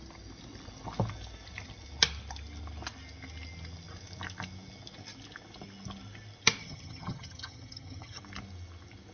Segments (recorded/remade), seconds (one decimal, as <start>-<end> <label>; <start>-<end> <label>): 0.0-6.6 recorded; 6.6-8.2 remade; 8.2-9.1 recorded